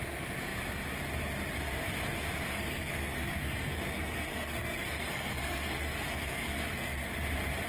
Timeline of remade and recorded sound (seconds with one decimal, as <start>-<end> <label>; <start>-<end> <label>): 0.0-2.5 recorded; 2.5-7.1 remade; 7.1-7.7 recorded